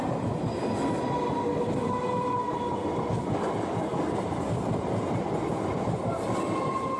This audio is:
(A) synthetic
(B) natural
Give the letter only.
B